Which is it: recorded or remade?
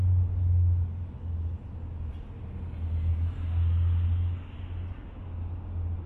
recorded